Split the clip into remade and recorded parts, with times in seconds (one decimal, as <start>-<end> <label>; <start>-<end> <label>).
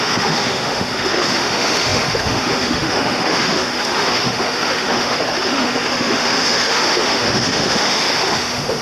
0.0-8.8 remade